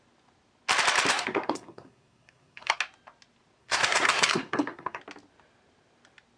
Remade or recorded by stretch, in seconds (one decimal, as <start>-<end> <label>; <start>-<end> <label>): 0.0-1.1 recorded; 1.1-2.8 remade; 2.8-3.6 recorded; 3.6-5.0 remade; 5.0-6.4 recorded